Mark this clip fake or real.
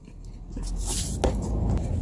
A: real